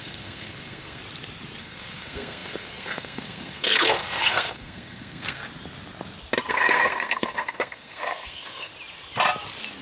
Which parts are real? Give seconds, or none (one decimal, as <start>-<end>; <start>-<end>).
1.0-1.6; 5.4-6.5; 8.7-9.8